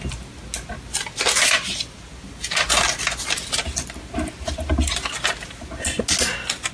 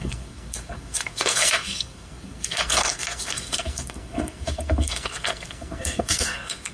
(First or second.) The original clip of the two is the first